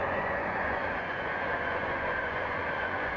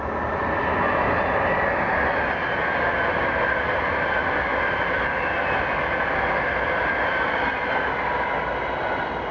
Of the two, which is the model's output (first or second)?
first